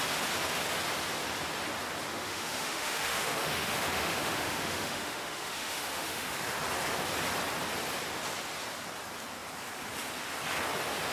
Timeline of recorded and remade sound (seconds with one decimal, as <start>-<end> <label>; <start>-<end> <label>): 0.0-2.1 recorded; 2.1-6.4 remade; 6.4-11.1 recorded